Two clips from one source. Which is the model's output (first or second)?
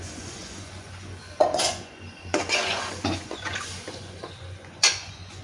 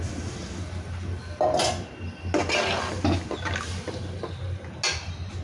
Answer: first